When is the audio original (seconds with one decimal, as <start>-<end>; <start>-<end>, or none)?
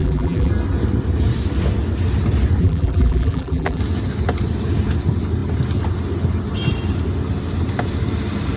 0.5-2.6; 3.8-8.6